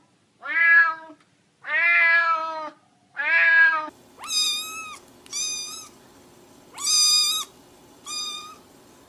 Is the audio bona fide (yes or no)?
yes